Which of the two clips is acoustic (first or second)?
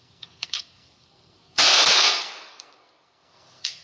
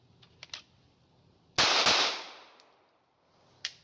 second